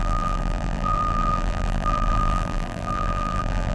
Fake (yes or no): yes